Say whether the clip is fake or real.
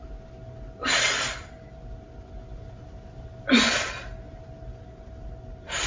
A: real